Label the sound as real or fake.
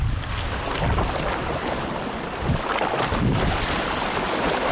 real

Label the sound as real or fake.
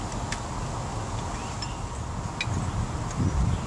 real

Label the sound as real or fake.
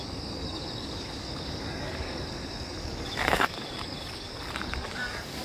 fake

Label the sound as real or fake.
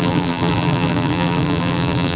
fake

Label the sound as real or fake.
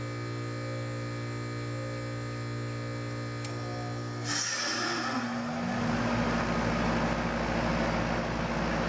real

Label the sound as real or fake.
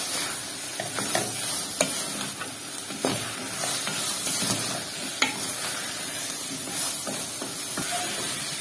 real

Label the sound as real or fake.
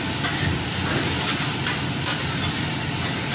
real